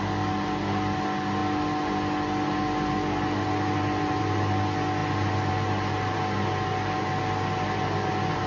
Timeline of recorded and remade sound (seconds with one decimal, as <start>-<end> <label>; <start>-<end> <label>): 0.0-8.5 recorded